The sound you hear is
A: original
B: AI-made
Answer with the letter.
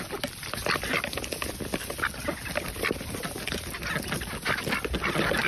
A